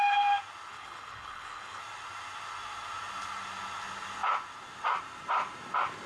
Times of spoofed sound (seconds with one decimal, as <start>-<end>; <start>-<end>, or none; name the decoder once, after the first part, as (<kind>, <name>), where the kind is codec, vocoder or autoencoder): 0.7-1.8 (codec, HILCodec)